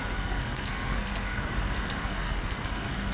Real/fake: fake